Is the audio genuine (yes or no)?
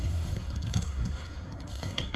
no